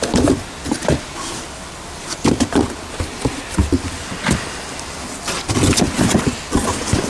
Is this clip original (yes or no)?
yes